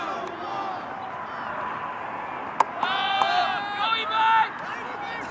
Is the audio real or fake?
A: real